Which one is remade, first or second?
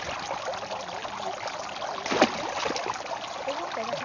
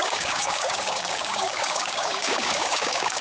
second